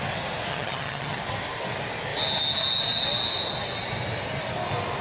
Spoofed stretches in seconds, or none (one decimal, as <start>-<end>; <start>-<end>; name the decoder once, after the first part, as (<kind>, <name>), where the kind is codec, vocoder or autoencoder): 0.5-1.2 (vocoder, HiFi-GAN)